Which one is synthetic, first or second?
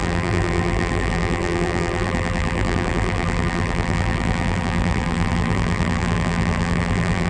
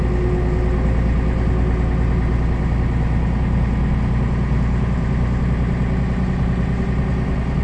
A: first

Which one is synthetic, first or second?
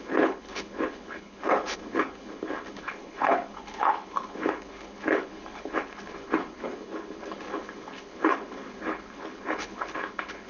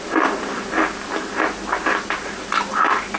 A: first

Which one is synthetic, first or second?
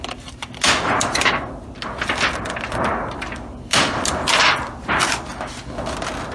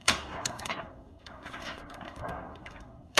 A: second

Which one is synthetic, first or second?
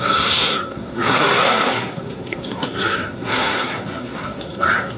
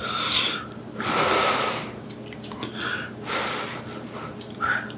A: first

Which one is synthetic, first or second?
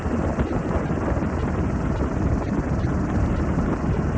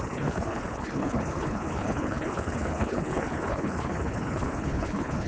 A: second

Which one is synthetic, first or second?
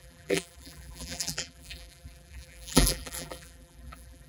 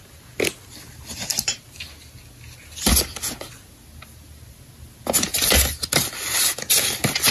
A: first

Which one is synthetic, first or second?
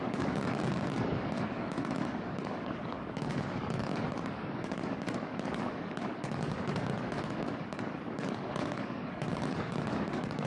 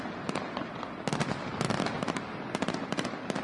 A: first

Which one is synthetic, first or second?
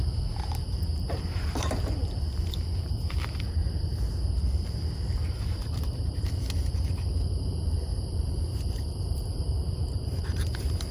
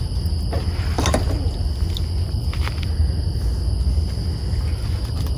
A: first